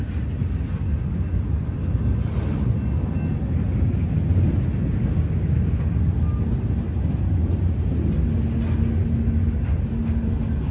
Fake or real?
real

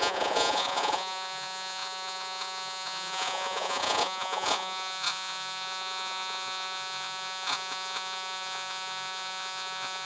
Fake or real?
fake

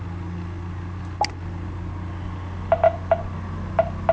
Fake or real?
real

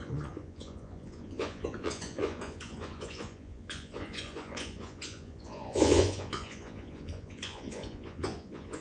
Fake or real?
fake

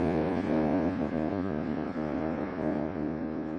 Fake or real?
fake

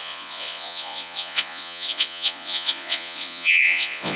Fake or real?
fake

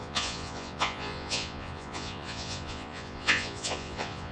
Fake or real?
fake